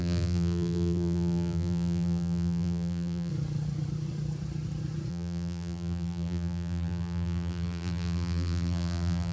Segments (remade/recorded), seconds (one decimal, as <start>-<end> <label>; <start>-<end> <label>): 0.0-3.3 remade; 3.3-5.1 recorded; 5.1-9.3 remade